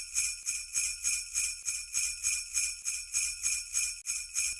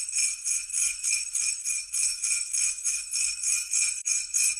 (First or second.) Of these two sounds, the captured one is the first